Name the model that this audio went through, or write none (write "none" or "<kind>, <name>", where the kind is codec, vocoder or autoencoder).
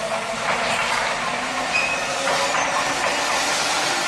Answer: none